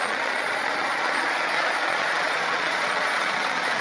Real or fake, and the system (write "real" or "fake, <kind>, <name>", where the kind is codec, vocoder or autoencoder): fake, vocoder, Vocos